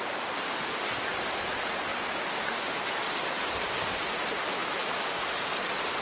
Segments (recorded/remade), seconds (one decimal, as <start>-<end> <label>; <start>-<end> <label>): 0.0-6.0 recorded